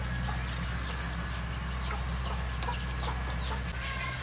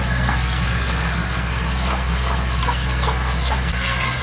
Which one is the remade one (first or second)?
second